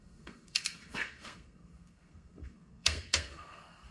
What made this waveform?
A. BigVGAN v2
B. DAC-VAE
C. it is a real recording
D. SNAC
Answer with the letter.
D